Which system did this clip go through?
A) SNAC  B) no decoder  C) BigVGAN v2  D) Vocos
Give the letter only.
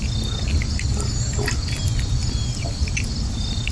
B